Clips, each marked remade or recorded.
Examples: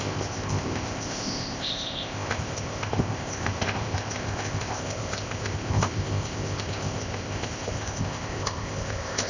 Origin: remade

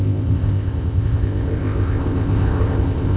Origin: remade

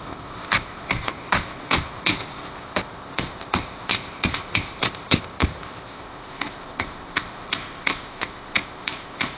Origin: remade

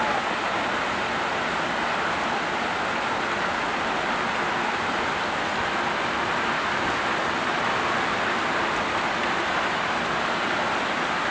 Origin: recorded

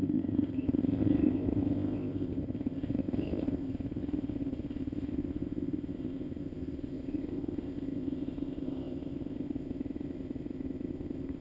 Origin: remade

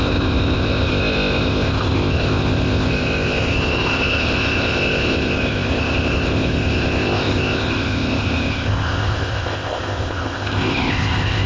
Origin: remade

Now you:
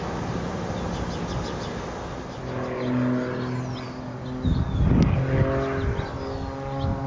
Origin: recorded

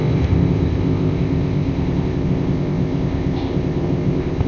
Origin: remade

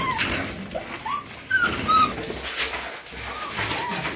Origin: recorded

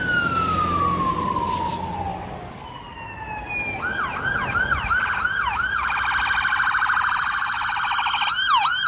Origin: recorded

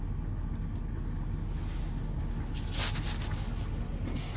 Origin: recorded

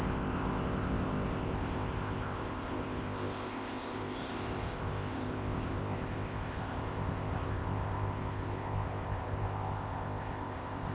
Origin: remade